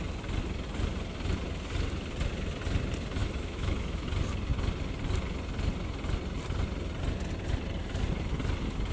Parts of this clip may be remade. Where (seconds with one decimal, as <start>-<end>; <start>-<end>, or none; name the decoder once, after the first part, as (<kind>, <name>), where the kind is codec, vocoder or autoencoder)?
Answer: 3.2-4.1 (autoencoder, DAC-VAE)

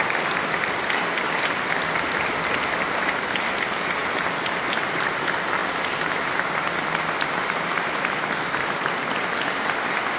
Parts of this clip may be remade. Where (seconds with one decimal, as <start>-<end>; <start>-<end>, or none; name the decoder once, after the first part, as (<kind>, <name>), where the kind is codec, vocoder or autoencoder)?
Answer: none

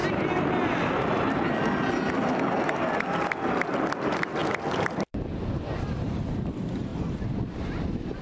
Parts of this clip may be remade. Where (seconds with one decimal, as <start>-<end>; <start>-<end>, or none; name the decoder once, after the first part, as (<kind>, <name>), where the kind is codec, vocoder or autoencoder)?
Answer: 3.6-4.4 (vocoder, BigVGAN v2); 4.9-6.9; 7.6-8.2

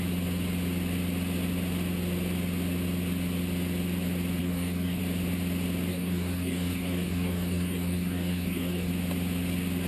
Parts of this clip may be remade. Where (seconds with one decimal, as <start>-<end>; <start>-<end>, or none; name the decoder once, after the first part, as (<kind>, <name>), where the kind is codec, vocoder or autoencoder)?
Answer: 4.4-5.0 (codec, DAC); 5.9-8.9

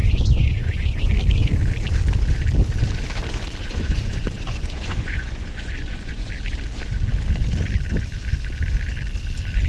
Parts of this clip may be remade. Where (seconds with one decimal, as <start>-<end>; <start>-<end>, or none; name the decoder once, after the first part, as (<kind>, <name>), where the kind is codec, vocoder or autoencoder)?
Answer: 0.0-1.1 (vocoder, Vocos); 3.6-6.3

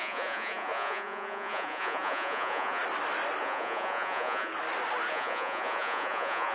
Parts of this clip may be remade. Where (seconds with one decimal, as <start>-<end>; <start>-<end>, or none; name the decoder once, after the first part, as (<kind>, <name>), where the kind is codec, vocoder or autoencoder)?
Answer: 0.0-2.8 (vocoder, Vocos); 3.4-4.5; 5.1-6.5

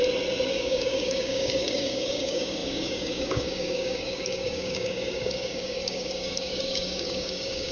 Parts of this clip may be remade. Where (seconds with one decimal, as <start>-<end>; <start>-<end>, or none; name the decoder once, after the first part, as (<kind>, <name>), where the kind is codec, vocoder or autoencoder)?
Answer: 0.5-7.7 (codec, DAC)